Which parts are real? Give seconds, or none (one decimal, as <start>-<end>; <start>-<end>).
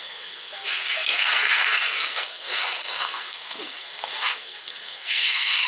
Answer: none